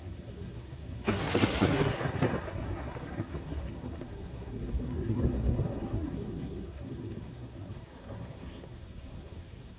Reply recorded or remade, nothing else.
remade